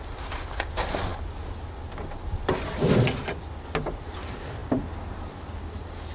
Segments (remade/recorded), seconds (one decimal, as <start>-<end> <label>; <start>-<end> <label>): 0.0-6.1 recorded